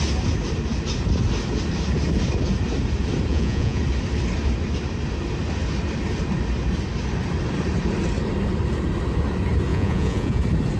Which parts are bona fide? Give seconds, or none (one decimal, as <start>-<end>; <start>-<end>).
0.0-3.3; 3.8-9.7; 10.4-10.8